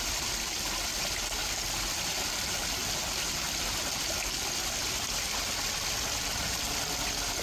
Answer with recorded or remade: recorded